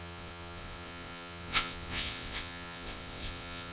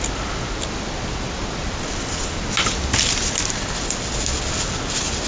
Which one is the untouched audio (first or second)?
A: second